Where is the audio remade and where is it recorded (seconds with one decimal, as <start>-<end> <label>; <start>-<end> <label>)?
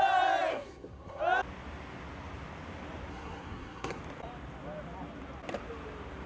0.0-0.5 recorded; 0.5-1.2 remade; 1.2-3.1 recorded; 3.1-4.0 remade; 4.0-6.3 recorded